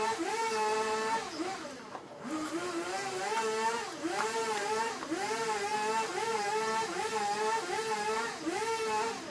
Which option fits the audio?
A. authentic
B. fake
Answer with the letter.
B